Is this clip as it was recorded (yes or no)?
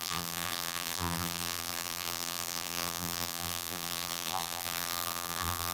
no